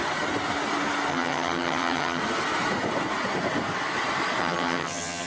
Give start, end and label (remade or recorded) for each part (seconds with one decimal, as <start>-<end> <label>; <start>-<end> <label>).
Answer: 0.0-1.1 recorded; 1.1-2.2 remade; 2.2-4.4 recorded; 4.4-5.3 remade